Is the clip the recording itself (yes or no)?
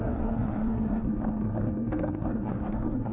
no